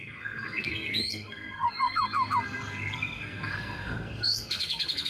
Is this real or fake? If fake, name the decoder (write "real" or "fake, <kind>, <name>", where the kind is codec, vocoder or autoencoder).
fake, codec, SNAC